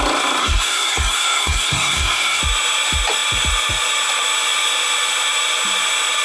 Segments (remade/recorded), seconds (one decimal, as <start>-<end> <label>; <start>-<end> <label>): 0.0-0.4 recorded; 0.4-2.4 remade; 2.4-6.2 recorded